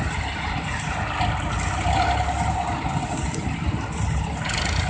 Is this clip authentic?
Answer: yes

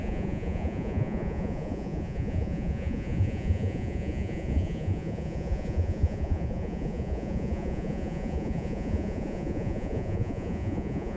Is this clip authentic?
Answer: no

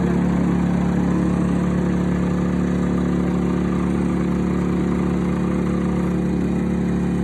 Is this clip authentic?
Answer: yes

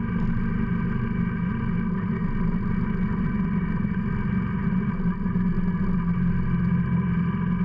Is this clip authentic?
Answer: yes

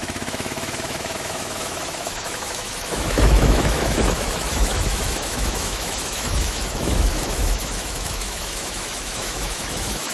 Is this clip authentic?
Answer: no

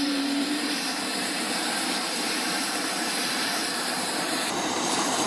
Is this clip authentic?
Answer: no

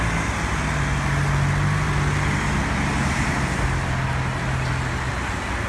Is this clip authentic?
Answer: yes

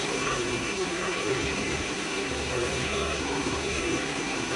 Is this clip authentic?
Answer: no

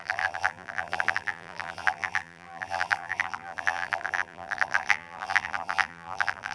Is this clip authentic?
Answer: no